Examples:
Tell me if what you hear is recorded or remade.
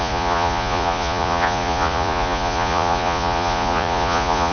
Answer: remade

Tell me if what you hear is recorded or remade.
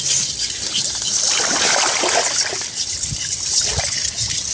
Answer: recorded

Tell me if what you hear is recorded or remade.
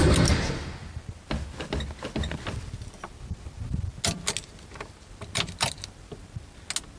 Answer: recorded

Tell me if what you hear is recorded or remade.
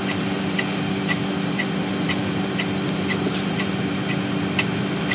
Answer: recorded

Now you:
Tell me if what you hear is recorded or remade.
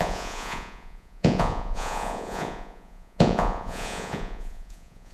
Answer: remade